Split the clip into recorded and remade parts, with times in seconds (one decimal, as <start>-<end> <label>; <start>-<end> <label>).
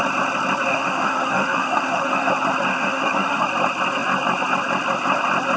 0.0-0.7 recorded; 0.7-2.3 remade; 2.3-2.7 recorded; 2.7-3.4 remade; 3.4-5.6 recorded